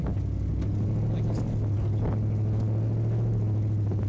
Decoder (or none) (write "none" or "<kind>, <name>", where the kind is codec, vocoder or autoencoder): none